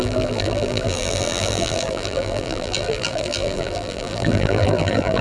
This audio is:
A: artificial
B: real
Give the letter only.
A